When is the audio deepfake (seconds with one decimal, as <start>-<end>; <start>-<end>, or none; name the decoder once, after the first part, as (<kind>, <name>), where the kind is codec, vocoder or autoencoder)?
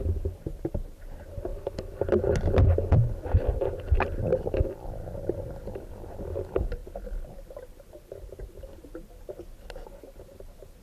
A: 1.5-5.9 (vocoder, BigVGAN v2)